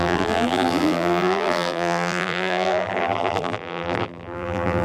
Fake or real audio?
fake